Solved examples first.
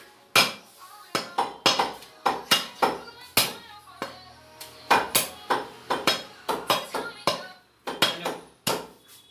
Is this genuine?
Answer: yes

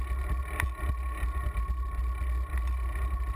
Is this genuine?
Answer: yes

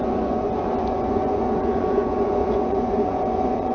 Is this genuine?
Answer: no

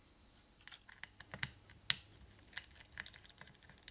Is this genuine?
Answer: yes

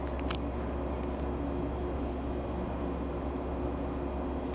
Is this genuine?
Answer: yes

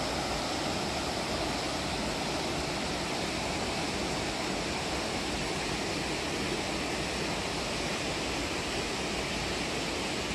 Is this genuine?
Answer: yes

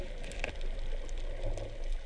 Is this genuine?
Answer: yes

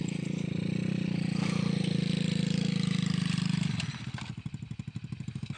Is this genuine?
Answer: yes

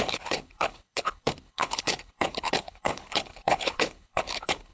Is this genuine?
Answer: no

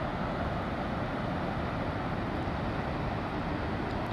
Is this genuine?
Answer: yes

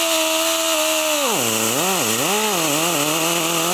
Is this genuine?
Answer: yes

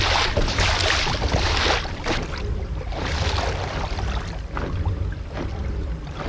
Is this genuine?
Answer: yes